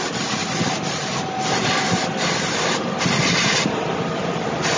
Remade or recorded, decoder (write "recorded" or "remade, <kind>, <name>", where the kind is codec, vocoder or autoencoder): recorded